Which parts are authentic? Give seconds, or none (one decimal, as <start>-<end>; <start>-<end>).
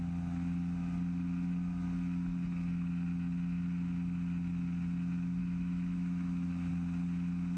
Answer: 0.0-5.4; 6.7-7.6